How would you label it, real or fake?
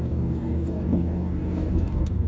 fake